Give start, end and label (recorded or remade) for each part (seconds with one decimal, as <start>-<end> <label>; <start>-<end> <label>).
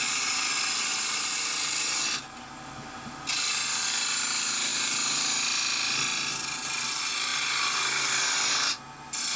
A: 0.0-9.4 recorded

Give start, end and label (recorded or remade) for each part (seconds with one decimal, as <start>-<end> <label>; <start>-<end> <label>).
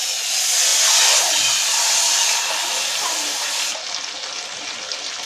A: 0.0-5.2 recorded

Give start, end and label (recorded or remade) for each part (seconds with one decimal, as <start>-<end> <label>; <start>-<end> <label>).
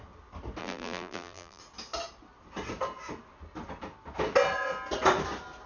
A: 0.0-0.6 recorded; 0.6-1.6 remade; 1.6-5.7 recorded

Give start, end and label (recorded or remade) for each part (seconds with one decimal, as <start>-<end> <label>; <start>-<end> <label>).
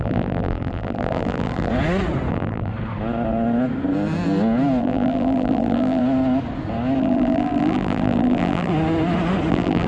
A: 0.0-1.7 remade; 1.7-2.3 recorded; 2.3-2.7 remade; 2.7-4.8 recorded; 4.8-6.0 remade; 6.0-7.0 recorded; 7.0-8.7 remade; 8.7-9.5 recorded; 9.5-9.9 remade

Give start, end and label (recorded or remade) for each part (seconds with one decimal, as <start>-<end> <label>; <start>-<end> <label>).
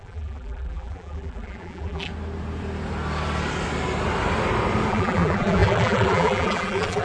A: 0.0-2.1 remade; 2.1-4.9 recorded; 4.9-7.0 remade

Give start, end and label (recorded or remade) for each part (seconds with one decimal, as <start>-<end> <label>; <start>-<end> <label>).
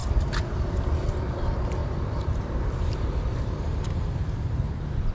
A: 0.0-1.4 remade; 1.4-1.8 recorded; 1.8-5.1 remade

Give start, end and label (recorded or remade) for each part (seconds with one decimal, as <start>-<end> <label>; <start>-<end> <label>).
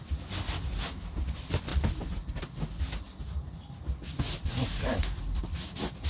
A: 0.0-1.7 recorded; 1.7-2.3 remade; 2.3-4.4 recorded; 4.4-5.4 remade; 5.4-6.1 recorded